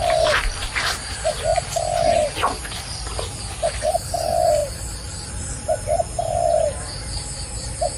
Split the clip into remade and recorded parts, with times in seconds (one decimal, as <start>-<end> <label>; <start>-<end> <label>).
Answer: 0.0-8.0 recorded